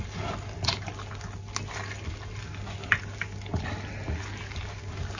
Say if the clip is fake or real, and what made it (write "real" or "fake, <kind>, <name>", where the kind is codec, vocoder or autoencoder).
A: real